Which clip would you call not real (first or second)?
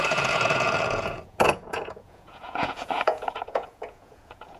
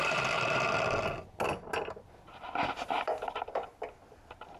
first